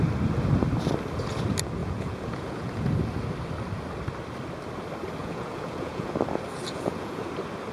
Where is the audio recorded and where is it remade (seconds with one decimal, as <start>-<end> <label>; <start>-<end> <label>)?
0.0-1.8 recorded; 1.8-2.9 remade; 2.9-5.2 recorded; 5.2-6.1 remade; 6.1-6.6 recorded; 6.6-7.3 remade; 7.3-7.7 recorded